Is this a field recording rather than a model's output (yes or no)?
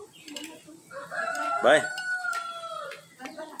yes